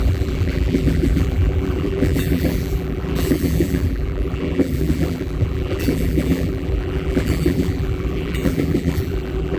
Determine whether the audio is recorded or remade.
remade